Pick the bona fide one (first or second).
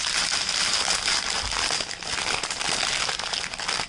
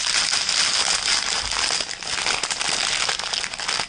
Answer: second